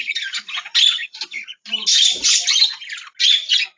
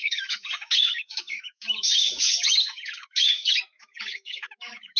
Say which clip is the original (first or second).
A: first